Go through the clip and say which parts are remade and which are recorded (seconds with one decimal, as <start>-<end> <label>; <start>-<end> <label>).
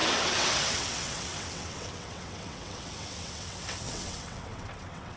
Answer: 0.0-5.2 remade